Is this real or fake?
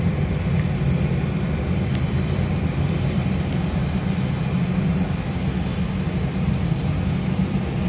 real